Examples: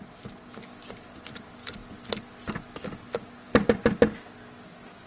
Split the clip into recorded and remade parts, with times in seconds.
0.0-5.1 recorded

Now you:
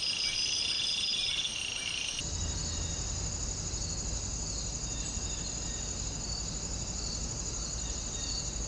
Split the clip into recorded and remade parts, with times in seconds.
0.0-8.7 recorded

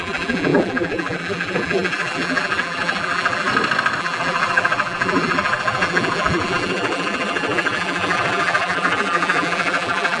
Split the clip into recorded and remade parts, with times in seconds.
0.0-3.5 remade; 3.5-4.0 recorded; 4.0-10.2 remade

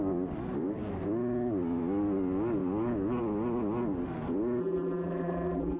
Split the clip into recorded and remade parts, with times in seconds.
0.0-4.6 recorded; 4.6-5.8 remade

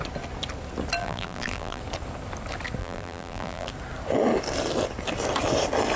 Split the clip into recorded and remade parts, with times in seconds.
0.0-1.0 recorded; 1.0-1.8 remade; 1.8-2.8 recorded; 2.8-3.7 remade; 3.7-6.0 recorded

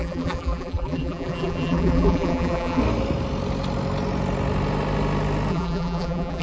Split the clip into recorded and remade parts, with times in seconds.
0.0-2.8 remade; 2.8-5.5 recorded; 5.5-6.4 remade

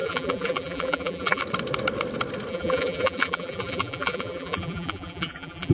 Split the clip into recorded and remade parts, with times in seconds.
0.0-1.4 remade; 1.4-2.5 recorded; 2.5-5.7 remade

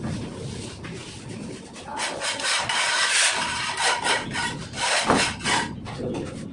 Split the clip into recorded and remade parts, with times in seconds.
0.0-1.0 recorded; 1.0-4.9 remade; 4.9-6.5 recorded